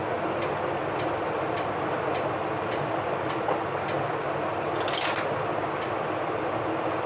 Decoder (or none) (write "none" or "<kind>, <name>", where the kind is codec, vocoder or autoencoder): none